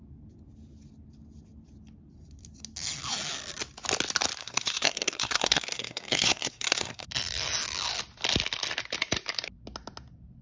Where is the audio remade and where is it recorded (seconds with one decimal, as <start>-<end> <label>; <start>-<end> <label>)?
0.0-4.4 recorded; 4.4-7.1 remade; 7.1-10.4 recorded